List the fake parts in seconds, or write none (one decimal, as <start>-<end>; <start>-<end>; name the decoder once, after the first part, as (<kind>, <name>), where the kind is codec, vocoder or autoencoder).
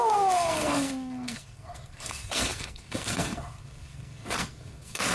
0.0-5.1 (codec, SNAC)